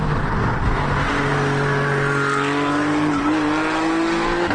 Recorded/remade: recorded